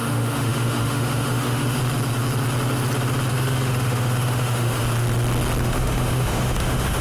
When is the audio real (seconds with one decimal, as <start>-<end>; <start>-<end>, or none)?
1.8-3.3; 4.8-5.6